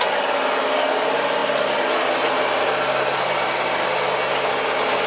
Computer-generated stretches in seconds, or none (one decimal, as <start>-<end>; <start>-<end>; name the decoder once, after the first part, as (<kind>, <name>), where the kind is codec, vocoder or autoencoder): none